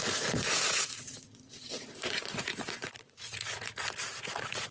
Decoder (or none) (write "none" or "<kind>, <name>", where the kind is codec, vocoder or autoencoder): vocoder, Vocos